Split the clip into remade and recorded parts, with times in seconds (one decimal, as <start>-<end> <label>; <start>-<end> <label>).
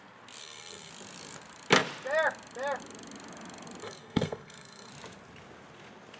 0.0-0.4 recorded; 0.4-0.9 remade; 0.9-3.8 recorded; 3.8-4.9 remade; 4.9-6.2 recorded